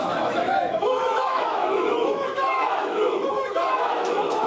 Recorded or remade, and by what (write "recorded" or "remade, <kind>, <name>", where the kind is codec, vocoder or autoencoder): remade, autoencoder, DAC-VAE